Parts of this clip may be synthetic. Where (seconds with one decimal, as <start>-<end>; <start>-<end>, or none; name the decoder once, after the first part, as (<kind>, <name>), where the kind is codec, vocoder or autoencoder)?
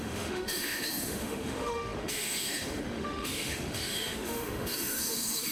0.0-5.5 (autoencoder, DAC-VAE)